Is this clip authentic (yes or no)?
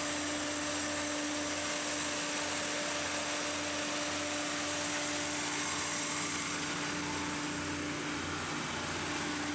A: yes